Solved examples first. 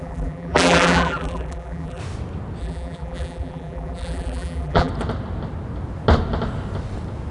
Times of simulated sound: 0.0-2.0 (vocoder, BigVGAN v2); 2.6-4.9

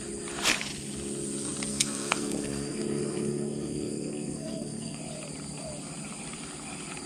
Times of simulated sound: 1.7-5.0 (codec, SNAC)

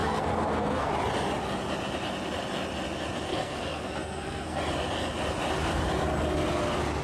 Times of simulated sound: 0.0-0.9 (codec, SNAC); 3.3-4.6

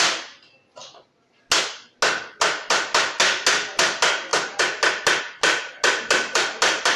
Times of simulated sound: none

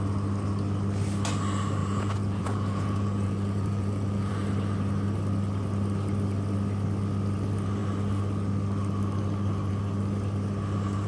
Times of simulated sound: 1.8-4.3 (vocoder, Vocos)

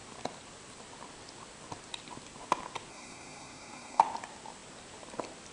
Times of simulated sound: 2.9-4.0 (codec, SNAC)